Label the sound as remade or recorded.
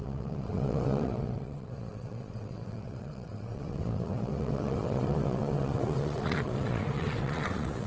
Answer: remade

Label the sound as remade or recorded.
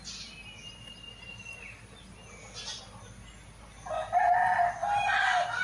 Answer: recorded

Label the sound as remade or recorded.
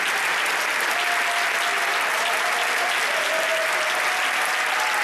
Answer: recorded